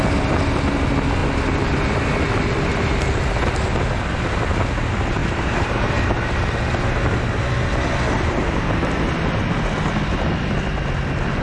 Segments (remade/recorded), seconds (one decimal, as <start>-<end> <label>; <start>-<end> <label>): 0.0-5.2 recorded; 5.2-5.9 remade; 5.9-11.4 recorded